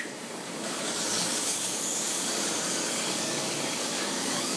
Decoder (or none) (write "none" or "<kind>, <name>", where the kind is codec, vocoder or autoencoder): codec, DAC